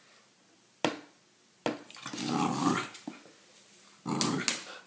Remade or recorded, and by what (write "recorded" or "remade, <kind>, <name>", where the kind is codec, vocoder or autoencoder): recorded